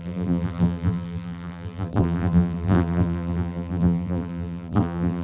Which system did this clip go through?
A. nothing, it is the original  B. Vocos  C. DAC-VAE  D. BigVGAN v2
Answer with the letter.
D